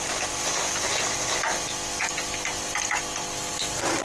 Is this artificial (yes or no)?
no